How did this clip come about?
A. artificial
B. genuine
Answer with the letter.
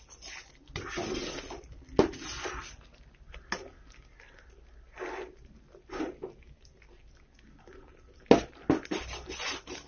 B